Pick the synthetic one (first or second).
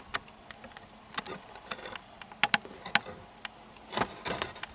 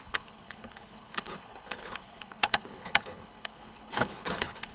second